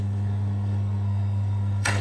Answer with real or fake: fake